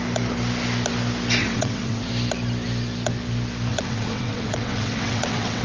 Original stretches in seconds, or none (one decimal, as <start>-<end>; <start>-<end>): 0.0-1.4; 2.1-3.7